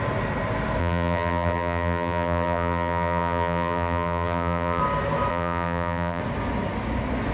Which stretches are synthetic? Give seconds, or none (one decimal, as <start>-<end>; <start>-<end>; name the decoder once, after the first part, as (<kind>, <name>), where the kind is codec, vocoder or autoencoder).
0.8-4.8 (vocoder, BigVGAN v2); 5.3-6.2